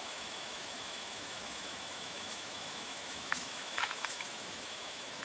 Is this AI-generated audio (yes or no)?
yes